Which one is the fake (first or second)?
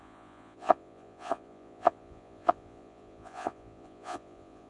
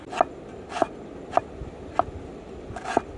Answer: first